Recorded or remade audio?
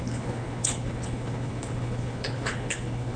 remade